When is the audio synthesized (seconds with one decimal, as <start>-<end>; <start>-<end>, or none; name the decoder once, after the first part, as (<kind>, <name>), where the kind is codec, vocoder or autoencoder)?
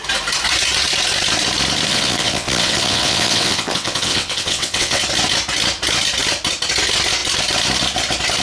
1.9-5.0 (vocoder, WaveNeXt)